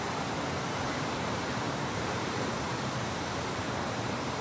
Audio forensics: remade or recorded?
remade